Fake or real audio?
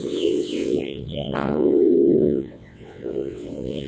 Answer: fake